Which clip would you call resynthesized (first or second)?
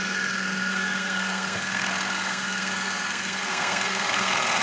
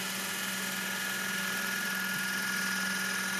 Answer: first